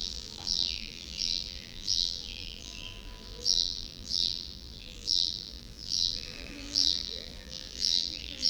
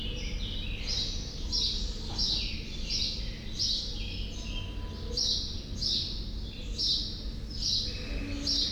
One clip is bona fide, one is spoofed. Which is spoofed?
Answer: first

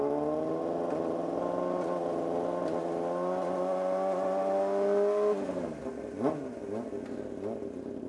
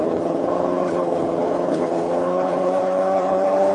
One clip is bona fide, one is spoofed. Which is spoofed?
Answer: second